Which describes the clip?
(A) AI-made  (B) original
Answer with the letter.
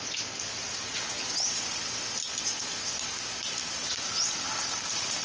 B